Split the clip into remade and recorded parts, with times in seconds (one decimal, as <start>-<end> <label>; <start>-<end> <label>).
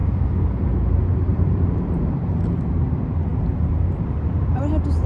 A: 0.0-1.3 recorded; 1.3-2.3 remade; 2.3-3.3 recorded; 3.3-4.6 remade; 4.6-5.1 recorded